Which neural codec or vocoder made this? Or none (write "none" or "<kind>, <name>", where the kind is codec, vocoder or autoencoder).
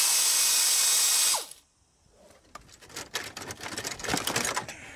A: none